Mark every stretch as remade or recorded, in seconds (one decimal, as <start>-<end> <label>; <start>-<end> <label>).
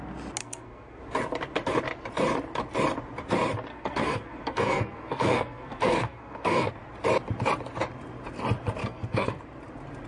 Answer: 0.0-0.4 recorded; 0.4-1.0 remade; 1.0-3.7 recorded; 3.7-6.7 remade; 6.7-8.8 recorded; 8.8-9.4 remade; 9.4-10.1 recorded